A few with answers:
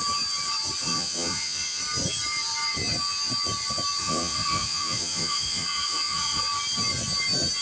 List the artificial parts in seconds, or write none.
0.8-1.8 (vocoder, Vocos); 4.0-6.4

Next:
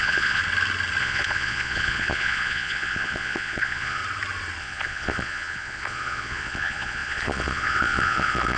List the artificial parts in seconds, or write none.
0.0-0.4 (vocoder, Vocos); 1.0-4.0; 4.6-8.6

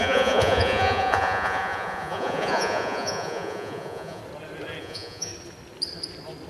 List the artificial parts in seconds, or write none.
0.0-4.2 (vocoder, Vocos); 4.8-5.3

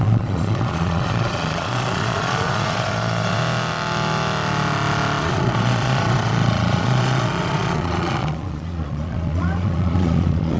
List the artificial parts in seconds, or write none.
0.0-3.4 (vocoder, Vocos); 5.2-10.6